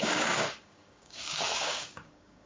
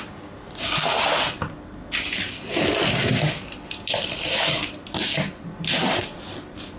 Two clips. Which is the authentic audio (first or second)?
second